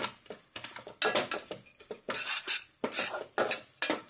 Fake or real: real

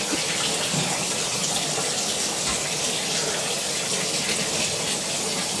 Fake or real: real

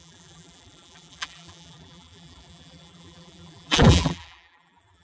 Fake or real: fake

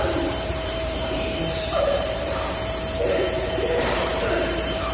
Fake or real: fake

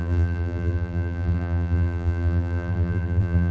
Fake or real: fake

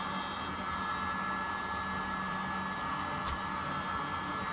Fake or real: real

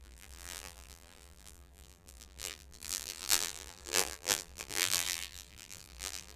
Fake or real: fake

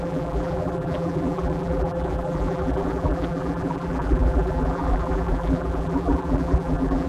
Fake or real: fake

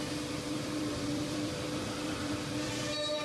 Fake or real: fake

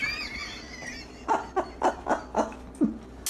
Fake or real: real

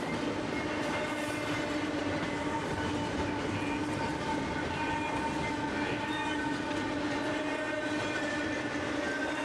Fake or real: real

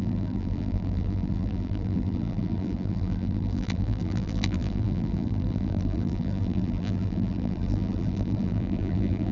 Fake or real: fake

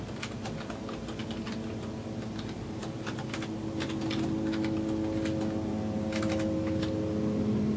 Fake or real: real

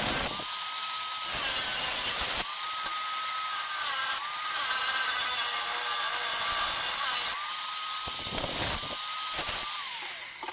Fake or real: real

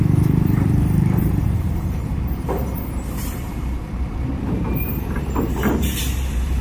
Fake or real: fake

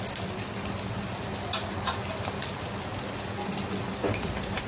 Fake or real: real